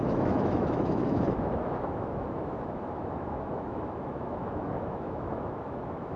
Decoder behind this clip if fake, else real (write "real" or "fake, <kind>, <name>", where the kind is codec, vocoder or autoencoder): fake, autoencoder, DAC-VAE